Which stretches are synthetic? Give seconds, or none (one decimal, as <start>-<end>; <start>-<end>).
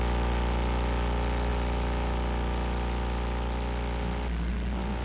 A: none